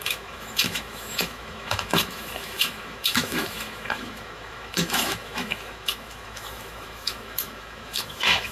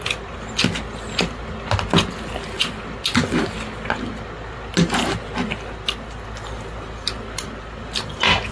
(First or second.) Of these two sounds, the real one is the second